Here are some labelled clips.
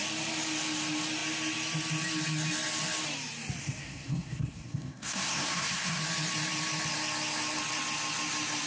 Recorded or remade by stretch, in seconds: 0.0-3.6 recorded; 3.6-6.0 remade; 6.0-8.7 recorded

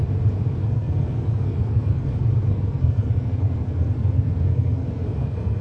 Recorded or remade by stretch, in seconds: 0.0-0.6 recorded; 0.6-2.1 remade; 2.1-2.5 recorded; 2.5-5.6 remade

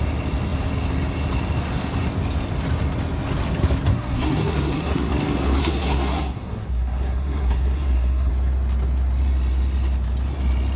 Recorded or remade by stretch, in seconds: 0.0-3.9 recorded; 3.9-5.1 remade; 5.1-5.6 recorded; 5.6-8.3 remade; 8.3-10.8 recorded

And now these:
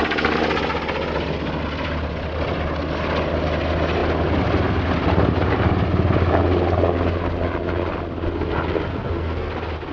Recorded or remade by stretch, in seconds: 0.0-8.9 recorded; 8.9-9.5 remade; 9.5-9.9 recorded